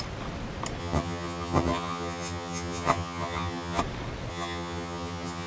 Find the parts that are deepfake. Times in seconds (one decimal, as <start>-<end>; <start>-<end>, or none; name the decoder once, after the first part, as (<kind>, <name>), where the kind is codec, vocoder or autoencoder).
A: 0.8-3.8 (vocoder, HiFi-GAN); 4.3-5.5